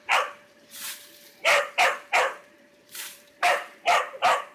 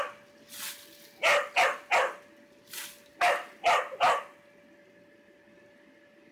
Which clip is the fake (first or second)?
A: first